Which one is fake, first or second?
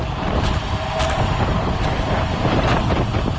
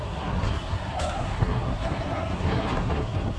second